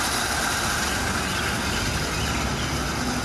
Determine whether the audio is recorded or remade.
recorded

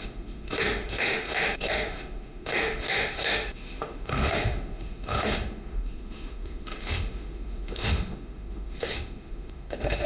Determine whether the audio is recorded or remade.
remade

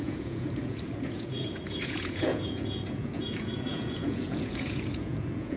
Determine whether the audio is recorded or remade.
remade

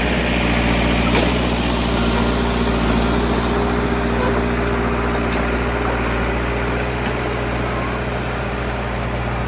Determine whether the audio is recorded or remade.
recorded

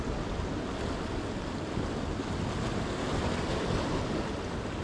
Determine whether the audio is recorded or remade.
recorded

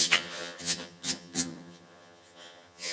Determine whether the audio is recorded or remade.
remade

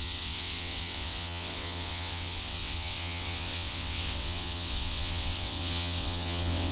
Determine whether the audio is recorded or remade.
remade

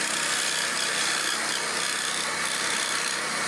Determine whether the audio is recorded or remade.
recorded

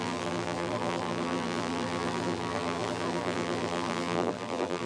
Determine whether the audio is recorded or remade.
remade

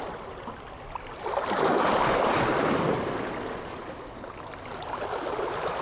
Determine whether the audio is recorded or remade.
recorded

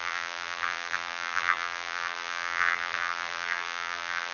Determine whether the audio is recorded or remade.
remade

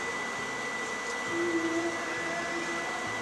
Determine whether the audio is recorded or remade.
recorded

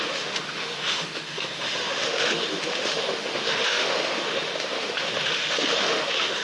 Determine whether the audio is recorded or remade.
remade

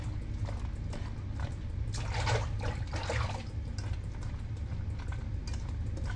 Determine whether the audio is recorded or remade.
recorded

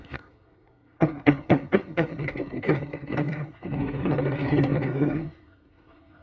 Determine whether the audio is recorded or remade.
remade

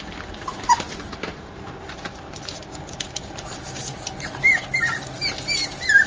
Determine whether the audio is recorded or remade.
remade